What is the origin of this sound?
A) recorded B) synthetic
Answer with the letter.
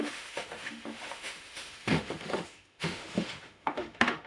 B